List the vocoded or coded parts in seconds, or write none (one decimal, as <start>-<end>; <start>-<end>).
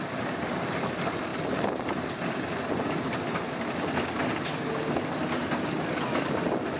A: 0.0-1.3; 5.4-6.8